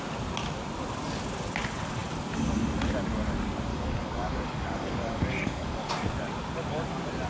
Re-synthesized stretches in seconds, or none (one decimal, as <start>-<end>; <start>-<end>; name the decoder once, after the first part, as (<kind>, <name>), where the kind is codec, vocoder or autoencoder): 3.7-5.9 (codec, DAC)